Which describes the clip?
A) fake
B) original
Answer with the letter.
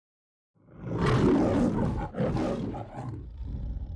B